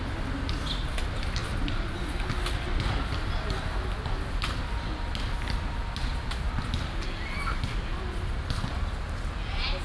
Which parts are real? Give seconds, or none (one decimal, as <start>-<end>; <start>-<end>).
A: 0.0-9.8